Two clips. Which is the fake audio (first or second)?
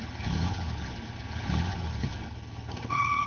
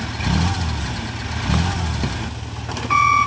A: first